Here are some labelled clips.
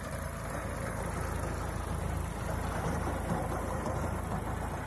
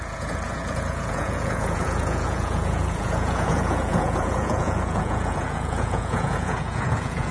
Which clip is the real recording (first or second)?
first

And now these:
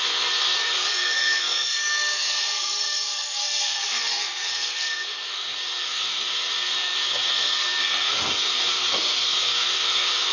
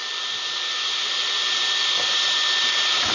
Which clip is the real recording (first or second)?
second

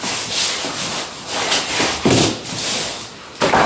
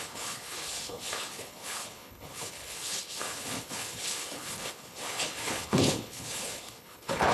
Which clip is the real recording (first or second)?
first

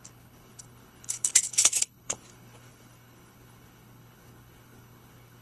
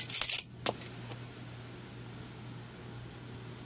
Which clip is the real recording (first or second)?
second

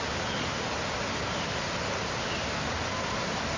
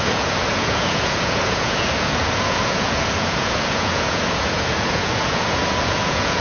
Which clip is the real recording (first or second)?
first